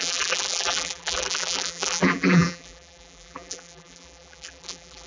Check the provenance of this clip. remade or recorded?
remade